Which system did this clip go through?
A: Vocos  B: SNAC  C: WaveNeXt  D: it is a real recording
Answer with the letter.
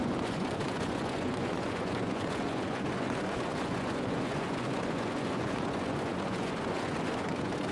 A